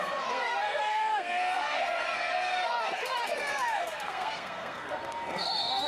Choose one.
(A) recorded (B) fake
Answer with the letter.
B